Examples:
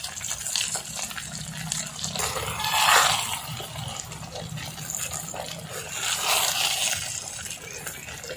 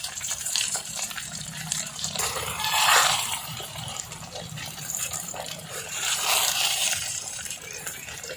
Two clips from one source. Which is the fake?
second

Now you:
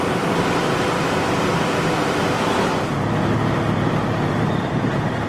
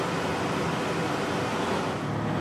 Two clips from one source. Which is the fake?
first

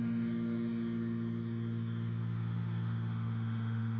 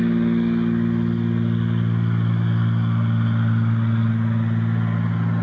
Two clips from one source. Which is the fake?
first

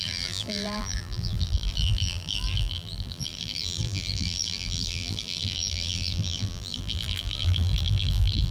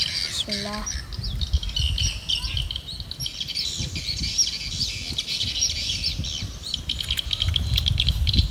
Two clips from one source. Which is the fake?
first